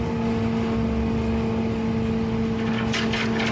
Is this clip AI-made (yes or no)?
no